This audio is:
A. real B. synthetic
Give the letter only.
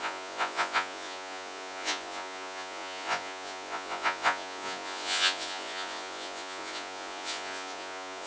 B